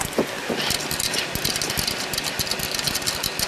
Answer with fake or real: real